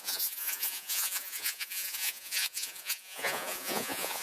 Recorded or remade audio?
remade